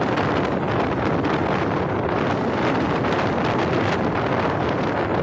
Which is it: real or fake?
fake